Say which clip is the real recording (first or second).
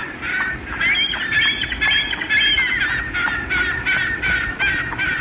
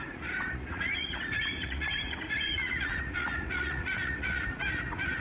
first